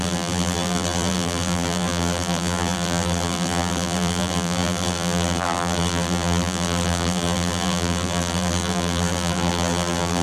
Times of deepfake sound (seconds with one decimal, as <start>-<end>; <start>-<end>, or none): 0.0-10.2